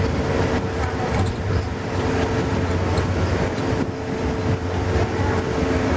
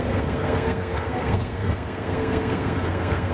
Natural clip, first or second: first